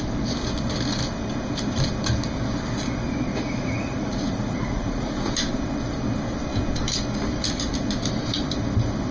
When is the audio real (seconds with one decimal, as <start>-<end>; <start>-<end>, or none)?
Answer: 0.0-3.3; 5.3-9.1